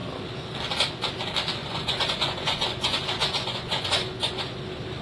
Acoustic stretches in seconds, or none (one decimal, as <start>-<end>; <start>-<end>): 0.0-1.6; 4.6-5.0